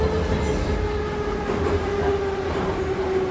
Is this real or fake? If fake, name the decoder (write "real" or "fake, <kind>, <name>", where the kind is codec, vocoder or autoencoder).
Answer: real